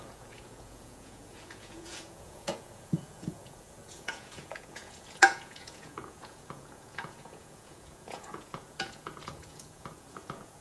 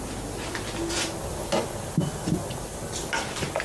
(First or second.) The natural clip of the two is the second